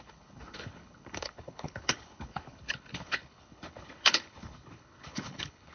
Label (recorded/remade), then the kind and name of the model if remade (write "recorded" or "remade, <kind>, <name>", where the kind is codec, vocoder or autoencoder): remade, codec, HILCodec